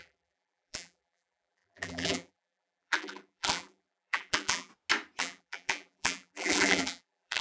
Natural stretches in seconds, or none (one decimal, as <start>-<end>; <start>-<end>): 4.7-5.2